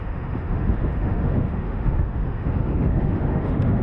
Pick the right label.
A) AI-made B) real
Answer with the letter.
A